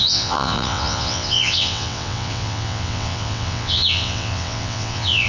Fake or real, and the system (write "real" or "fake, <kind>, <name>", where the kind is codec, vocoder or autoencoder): fake, vocoder, WaveNeXt